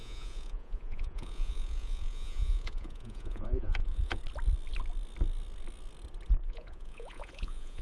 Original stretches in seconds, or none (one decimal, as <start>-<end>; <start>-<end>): 4.2-6.4